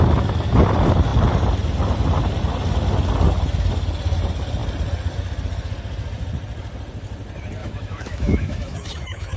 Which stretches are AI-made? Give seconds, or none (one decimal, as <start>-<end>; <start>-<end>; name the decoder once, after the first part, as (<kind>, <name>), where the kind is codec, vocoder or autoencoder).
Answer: 7.6-9.4 (autoencoder, DAC-VAE)